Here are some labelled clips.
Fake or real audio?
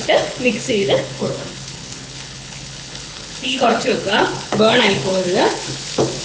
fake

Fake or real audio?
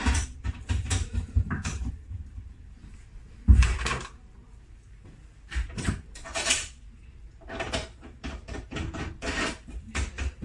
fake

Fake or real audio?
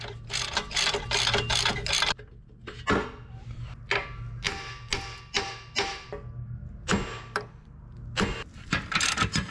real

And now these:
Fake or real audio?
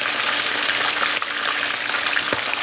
real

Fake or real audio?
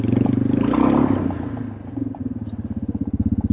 real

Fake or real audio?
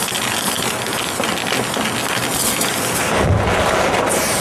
real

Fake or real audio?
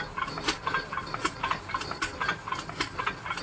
real